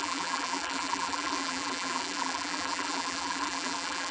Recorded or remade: remade